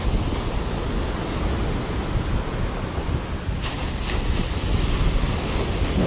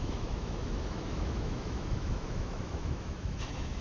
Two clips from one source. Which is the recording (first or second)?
first